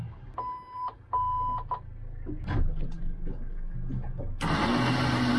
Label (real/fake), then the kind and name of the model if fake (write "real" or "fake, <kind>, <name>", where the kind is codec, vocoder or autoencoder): real